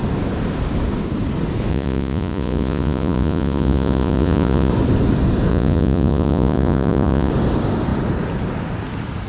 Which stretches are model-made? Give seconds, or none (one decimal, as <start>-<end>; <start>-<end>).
1.7-4.7; 5.5-7.3